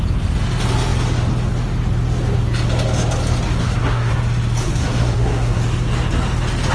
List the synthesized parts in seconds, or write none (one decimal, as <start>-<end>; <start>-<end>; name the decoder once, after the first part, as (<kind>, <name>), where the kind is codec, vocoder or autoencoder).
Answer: 3.6-4.1 (codec, SNAC); 4.6-5.6